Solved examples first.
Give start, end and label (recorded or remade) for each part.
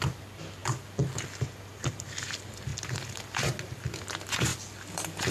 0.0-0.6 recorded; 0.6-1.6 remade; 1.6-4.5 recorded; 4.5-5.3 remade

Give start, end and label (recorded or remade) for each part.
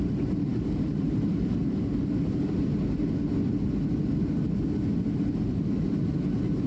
0.0-2.7 remade; 2.7-5.2 recorded; 5.2-6.7 remade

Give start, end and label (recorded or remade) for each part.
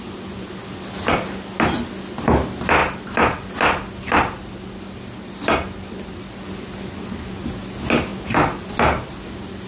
0.0-9.7 recorded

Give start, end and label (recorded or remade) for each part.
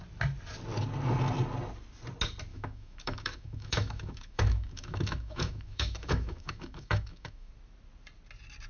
0.0-2.5 recorded; 2.5-7.5 remade; 7.5-8.7 recorded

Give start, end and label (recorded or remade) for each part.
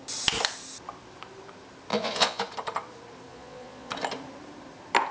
0.0-1.9 recorded; 1.9-2.4 remade; 2.4-3.3 recorded; 3.3-3.9 remade; 3.9-5.1 recorded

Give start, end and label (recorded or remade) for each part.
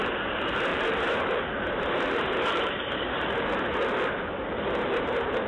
0.0-0.7 recorded; 0.7-3.8 remade; 3.8-5.5 recorded